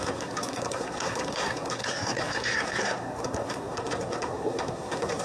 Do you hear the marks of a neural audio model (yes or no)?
yes